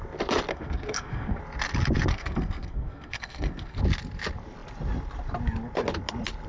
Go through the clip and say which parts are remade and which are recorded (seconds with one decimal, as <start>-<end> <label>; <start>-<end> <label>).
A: 0.0-0.5 recorded; 0.5-1.4 remade; 1.4-2.1 recorded; 2.1-3.8 remade; 3.8-6.5 recorded